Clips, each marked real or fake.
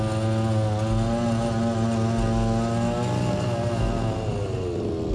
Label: real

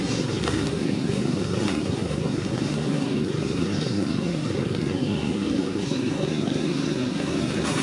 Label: fake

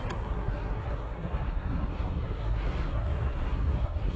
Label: fake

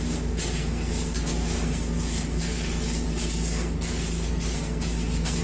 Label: fake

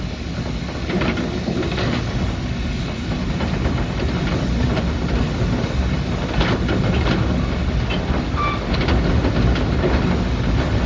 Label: real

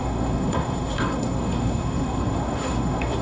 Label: fake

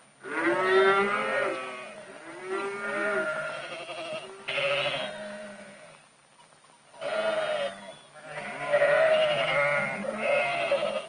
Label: real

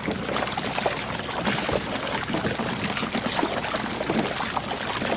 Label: real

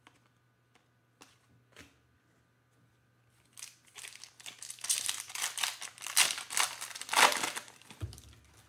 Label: real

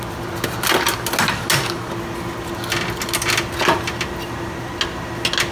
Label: real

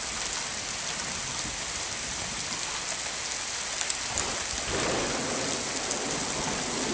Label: real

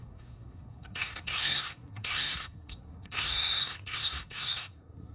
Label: fake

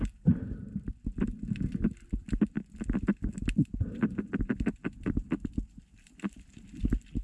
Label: real